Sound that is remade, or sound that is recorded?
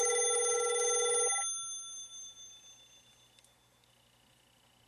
recorded